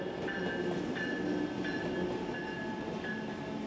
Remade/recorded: recorded